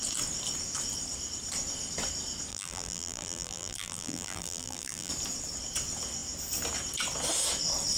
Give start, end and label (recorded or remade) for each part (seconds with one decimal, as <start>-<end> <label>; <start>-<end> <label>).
0.0-2.5 recorded; 2.5-5.1 remade; 5.1-8.0 recorded